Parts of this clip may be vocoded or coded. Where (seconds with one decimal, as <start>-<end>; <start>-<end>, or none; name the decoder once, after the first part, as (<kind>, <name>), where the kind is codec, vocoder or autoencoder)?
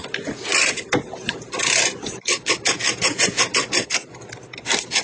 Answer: 0.5-3.5 (vocoder, BigVGAN v2)